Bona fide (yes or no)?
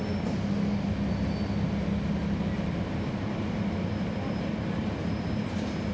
yes